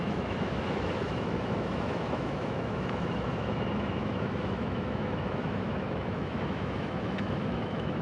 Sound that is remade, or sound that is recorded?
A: remade